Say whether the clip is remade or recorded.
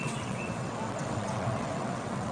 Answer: remade